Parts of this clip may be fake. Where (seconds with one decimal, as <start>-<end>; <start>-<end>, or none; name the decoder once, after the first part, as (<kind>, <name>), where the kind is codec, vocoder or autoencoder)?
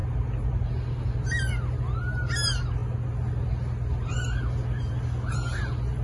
none